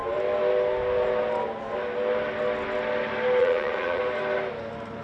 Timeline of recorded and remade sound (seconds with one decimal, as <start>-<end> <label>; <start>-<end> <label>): 0.0-3.4 recorded; 3.4-4.0 remade; 4.0-5.0 recorded